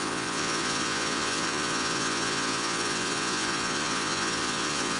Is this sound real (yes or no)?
no